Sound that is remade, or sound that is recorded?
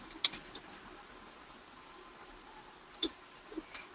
recorded